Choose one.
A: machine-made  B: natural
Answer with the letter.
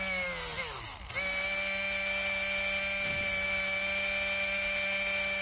B